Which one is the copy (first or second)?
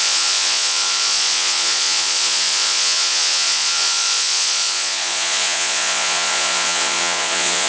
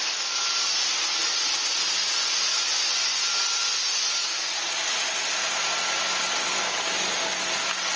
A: first